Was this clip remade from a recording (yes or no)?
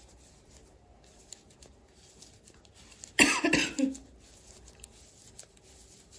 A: no